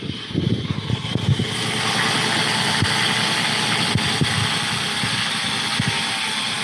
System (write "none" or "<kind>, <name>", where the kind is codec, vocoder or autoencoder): none